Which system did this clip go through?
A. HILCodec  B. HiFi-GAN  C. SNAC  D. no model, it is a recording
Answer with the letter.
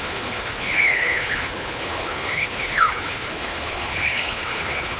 A